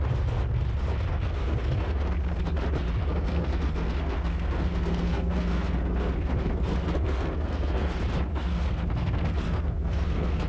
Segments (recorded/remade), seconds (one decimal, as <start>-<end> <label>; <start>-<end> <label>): 0.0-1.1 recorded; 1.1-2.0 remade; 2.0-3.0 recorded; 3.0-7.9 remade; 7.9-8.3 recorded; 8.3-10.5 remade